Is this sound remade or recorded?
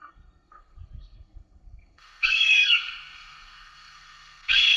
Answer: remade